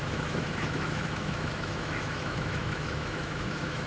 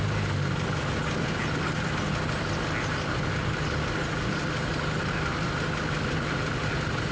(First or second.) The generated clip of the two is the first